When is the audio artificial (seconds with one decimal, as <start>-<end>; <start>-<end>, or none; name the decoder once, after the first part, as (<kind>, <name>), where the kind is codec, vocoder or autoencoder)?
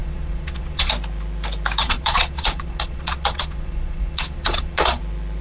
0.0-0.9 (vocoder, Vocos); 1.8-5.0